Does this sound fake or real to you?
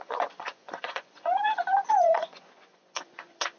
fake